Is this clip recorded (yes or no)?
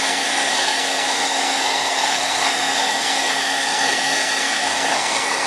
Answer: no